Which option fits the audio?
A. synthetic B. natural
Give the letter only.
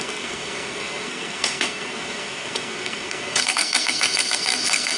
A